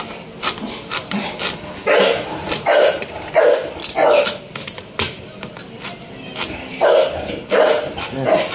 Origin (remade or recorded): recorded